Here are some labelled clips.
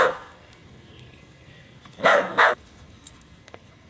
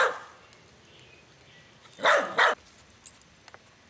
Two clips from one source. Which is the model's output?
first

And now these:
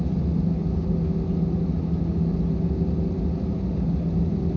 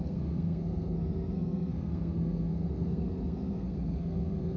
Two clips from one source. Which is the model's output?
second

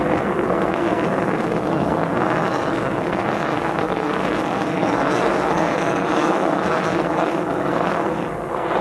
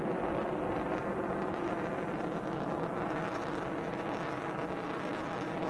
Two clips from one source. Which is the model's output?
first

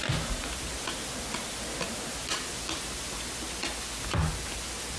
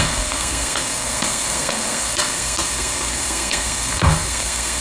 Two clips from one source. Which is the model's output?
second